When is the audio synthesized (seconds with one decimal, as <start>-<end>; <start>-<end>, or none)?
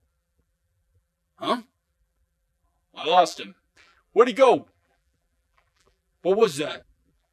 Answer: 0.0-7.3